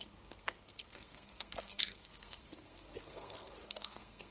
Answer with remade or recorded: remade